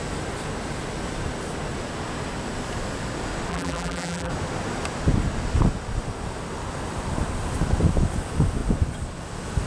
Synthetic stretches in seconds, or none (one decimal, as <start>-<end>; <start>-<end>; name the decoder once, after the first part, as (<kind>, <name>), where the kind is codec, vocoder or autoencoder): 3.5-4.3 (vocoder, BigVGAN v2)